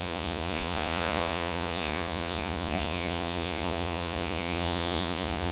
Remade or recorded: remade